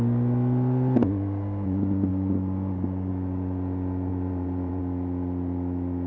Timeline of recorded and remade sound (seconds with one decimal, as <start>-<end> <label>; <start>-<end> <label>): 0.0-2.1 recorded; 2.1-3.1 remade; 3.1-4.1 recorded; 4.1-4.8 remade; 4.8-6.1 recorded